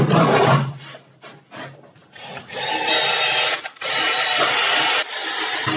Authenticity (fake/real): fake